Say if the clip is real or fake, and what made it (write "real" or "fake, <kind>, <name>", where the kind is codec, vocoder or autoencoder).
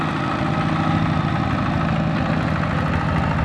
real